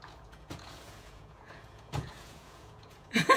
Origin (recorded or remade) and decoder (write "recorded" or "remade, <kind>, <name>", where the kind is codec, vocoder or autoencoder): remade, vocoder, Vocos